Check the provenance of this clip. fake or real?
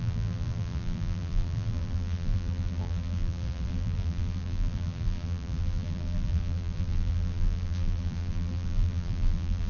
fake